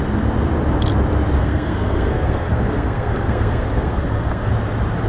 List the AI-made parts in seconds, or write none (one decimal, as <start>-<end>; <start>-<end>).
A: 1.4-4.5